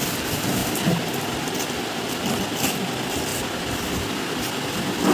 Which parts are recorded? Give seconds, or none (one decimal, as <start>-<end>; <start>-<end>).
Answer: 0.0-3.3; 4.2-5.1